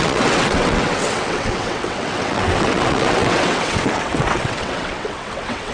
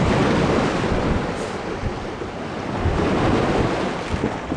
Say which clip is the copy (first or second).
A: first